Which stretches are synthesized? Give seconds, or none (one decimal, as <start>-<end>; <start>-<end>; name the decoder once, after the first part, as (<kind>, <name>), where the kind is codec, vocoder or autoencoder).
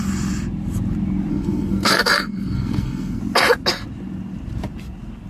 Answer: 1.3-3.2 (codec, SNAC)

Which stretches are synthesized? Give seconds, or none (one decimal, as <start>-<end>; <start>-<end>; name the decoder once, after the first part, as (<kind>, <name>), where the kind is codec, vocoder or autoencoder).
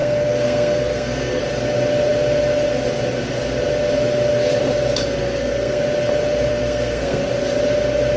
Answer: 0.0-1.4 (codec, SNAC); 5.2-5.8; 6.5-7.2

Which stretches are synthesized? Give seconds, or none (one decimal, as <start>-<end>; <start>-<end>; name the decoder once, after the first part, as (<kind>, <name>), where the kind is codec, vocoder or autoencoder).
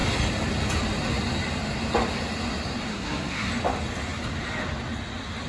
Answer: 2.9-3.5 (codec, SNAC)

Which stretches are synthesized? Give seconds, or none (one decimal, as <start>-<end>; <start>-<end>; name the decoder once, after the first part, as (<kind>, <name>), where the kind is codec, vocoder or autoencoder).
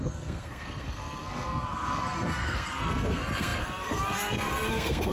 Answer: 0.0-5.1 (codec, SNAC)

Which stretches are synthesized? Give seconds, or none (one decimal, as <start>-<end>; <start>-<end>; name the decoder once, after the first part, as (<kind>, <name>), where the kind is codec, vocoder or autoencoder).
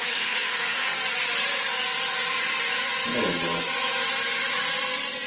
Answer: 0.0-1.0 (codec, SNAC)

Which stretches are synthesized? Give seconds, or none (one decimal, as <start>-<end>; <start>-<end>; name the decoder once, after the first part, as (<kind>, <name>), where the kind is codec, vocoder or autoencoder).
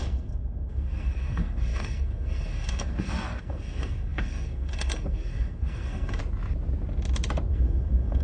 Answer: 0.0-6.2 (codec, SNAC); 7.5-8.2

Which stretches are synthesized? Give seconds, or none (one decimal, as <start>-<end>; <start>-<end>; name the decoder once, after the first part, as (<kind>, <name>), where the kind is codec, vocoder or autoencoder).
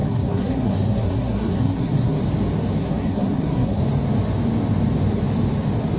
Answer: 0.0-2.2 (codec, SNAC); 2.8-3.8